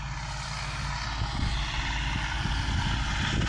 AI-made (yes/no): no